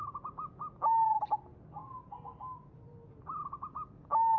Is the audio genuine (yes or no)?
yes